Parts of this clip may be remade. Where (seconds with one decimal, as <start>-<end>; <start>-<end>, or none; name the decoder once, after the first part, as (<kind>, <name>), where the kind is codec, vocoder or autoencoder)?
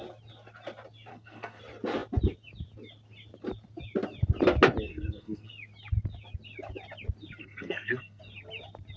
1.1-1.6 (codec, SNAC); 4.9-5.5; 7.4-8.2